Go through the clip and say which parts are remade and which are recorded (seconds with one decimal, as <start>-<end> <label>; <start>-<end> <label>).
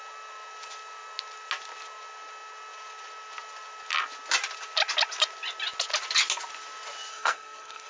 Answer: 0.0-7.1 recorded; 7.1-7.9 remade